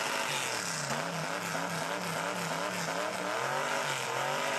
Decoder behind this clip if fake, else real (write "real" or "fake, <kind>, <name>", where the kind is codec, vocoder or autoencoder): real